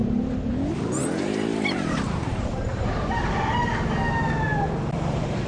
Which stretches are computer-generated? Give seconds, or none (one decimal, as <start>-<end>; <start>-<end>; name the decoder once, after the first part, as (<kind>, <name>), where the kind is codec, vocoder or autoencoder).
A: 0.0-0.5 (vocoder, BigVGAN v2); 1.5-3.3; 4.5-5.5